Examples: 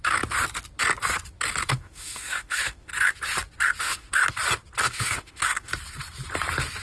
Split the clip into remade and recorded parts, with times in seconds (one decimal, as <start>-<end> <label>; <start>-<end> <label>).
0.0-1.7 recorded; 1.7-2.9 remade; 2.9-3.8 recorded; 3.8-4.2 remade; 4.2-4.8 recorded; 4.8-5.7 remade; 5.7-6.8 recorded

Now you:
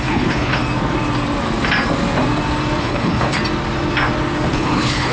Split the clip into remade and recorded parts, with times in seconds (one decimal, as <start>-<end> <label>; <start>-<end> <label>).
0.0-0.6 remade; 0.6-2.8 recorded; 2.8-3.4 remade; 3.4-4.5 recorded; 4.5-5.1 remade

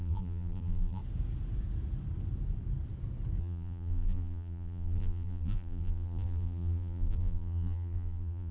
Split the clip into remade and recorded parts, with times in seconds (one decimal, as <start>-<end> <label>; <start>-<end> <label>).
0.0-1.0 remade; 1.0-3.4 recorded; 3.4-8.5 remade